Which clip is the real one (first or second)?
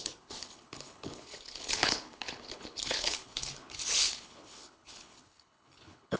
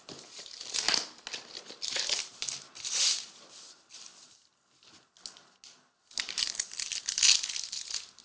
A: second